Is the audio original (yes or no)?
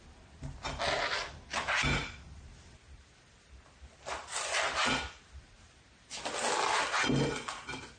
yes